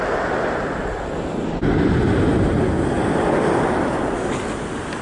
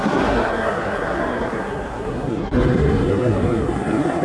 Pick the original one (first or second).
first